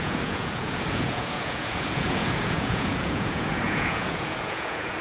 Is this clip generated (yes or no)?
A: yes